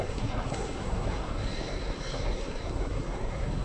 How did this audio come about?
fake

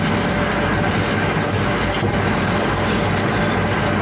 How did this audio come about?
real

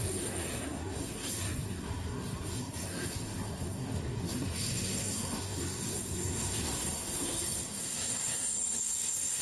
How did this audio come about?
fake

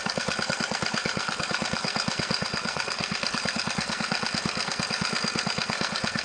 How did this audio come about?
fake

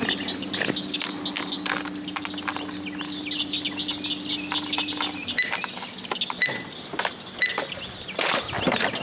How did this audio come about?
real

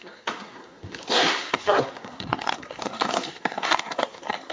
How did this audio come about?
fake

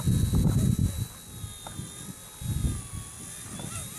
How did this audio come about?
real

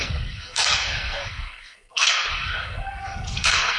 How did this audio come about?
fake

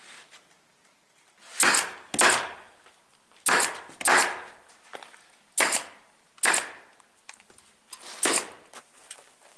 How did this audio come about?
real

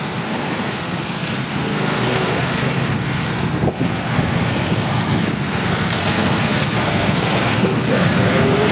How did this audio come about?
fake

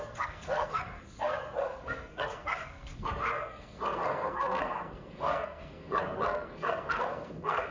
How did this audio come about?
fake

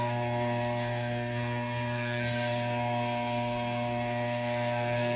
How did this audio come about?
fake